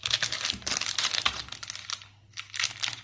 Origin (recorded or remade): recorded